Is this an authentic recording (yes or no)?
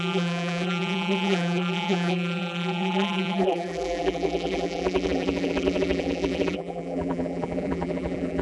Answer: no